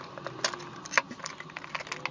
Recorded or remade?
recorded